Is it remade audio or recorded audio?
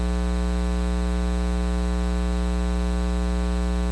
recorded